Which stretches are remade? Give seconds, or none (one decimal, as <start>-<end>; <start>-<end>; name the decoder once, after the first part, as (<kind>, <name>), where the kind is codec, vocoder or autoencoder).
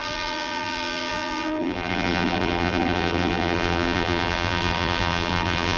0.0-5.8 (vocoder, BigVGAN v2)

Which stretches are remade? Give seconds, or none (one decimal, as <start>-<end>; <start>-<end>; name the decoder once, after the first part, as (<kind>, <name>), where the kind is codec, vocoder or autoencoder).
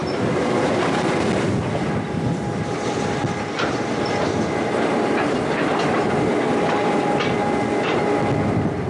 none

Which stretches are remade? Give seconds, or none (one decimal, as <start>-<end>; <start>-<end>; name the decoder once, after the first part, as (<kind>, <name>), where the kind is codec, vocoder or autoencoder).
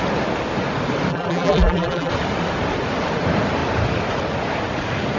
1.1-2.1 (vocoder, BigVGAN v2)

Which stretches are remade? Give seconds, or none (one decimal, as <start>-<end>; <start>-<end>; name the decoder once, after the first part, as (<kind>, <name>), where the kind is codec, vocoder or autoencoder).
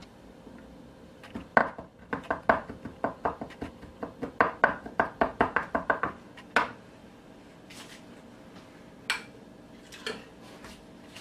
7.0-8.0 (vocoder, BigVGAN v2)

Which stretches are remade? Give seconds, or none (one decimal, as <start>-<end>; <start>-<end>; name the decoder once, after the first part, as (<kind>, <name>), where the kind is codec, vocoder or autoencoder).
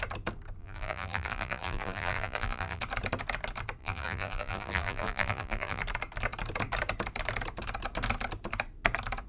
0.6-2.8 (vocoder, BigVGAN v2); 3.8-5.8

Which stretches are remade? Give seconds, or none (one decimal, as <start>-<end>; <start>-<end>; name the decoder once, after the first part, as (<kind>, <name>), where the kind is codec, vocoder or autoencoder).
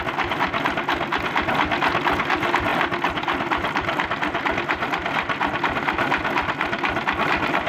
2.7-5.6 (vocoder, BigVGAN v2)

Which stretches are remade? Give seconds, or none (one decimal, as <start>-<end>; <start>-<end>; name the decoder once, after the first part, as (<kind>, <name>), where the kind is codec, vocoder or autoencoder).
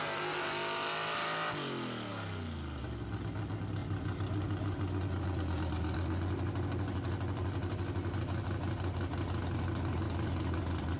3.8-4.9 (vocoder, BigVGAN v2)